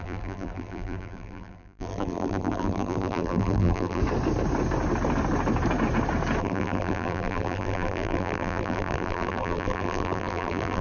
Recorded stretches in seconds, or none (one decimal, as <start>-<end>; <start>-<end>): 4.0-6.4